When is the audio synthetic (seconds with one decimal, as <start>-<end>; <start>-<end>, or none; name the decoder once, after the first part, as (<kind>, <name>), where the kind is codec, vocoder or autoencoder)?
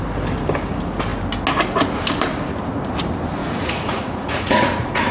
3.4-5.1 (vocoder, Vocos)